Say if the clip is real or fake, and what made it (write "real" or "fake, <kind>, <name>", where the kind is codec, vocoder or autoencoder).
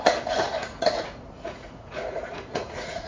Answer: fake, vocoder, Vocos